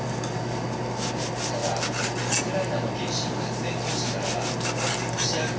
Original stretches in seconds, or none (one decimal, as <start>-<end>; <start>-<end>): 0.0-5.6